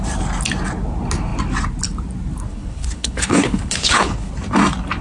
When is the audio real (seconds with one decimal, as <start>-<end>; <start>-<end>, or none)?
0.0-2.5; 4.3-5.0